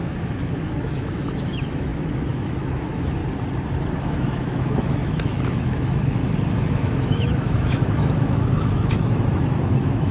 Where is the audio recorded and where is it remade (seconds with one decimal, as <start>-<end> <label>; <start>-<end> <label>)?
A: 0.0-3.2 remade; 3.2-4.0 recorded; 4.0-6.2 remade; 6.2-6.7 recorded; 6.7-10.1 remade